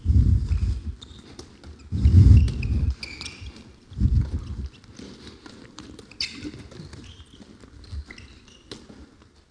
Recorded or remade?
recorded